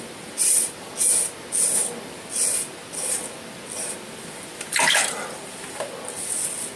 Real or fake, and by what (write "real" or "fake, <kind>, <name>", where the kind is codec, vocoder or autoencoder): real